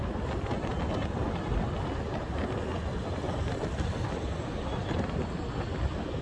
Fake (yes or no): no